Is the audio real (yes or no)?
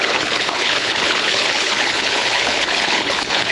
no